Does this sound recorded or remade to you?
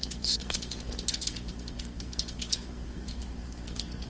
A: remade